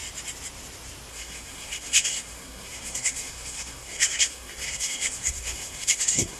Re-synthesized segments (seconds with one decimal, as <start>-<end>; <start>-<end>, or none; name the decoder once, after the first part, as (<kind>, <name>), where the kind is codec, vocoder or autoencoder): 1.1-6.4 (codec, SNAC)